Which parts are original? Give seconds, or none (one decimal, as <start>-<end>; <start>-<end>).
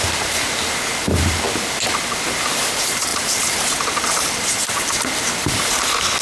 0.0-6.2